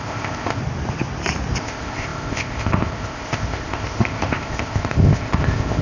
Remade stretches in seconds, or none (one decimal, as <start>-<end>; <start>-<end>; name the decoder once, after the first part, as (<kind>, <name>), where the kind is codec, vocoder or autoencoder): 0.0-0.6 (codec, ZipCodec); 1.6-5.8